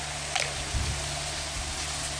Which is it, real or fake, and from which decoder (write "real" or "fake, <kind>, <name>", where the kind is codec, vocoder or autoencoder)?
real